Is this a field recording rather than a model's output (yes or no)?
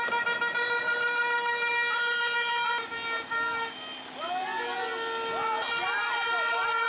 yes